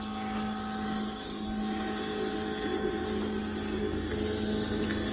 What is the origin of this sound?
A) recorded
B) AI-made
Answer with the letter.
A